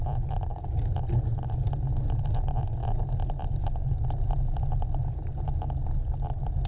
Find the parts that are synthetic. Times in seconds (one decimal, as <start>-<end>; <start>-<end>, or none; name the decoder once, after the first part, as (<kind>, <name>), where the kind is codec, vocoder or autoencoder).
none